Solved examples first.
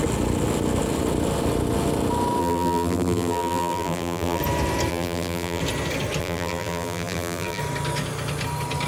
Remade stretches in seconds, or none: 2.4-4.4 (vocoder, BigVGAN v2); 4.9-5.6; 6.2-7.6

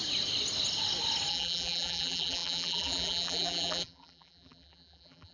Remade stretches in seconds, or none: 1.3-5.3 (vocoder, BigVGAN v2)

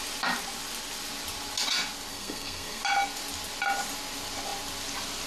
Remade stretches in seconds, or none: 2.1-2.8 (codec, SNAC)

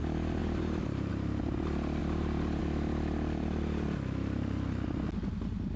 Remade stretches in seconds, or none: 0.4-1.1 (vocoder, BigVGAN v2); 2.0-2.6